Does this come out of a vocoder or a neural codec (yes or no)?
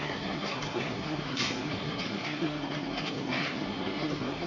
yes